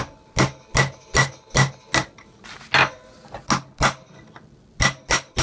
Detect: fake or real real